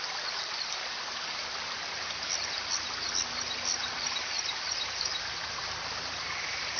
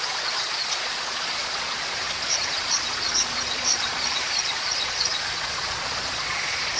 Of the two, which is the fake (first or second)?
second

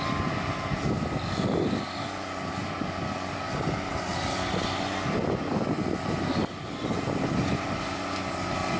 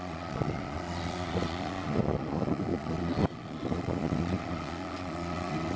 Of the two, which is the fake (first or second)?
second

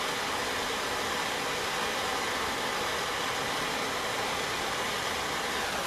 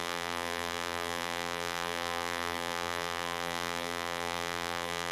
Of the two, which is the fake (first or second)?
second